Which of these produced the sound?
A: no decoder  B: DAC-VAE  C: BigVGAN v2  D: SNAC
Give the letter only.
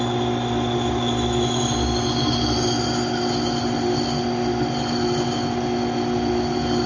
A